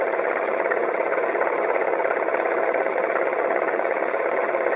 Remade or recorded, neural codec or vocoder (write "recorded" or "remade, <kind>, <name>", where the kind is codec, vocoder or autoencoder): remade, vocoder, HiFi-GAN